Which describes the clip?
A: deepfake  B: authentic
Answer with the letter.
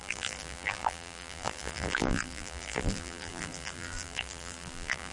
A